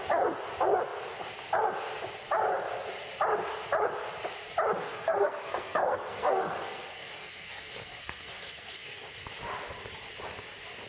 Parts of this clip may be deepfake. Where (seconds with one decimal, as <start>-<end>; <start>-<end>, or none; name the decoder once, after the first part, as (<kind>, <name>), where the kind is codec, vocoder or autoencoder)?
4.8-9.0 (codec, SNAC)